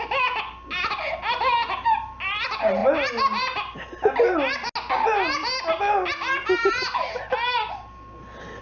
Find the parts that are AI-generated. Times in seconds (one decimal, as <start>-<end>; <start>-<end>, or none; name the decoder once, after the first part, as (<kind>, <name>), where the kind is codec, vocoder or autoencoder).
none